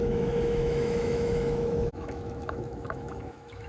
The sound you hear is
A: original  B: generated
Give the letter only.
B